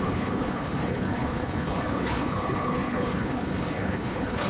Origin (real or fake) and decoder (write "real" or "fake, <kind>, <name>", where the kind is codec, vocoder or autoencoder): fake, codec, HILCodec